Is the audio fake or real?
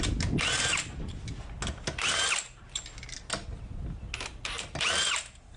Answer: real